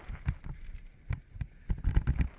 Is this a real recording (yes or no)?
yes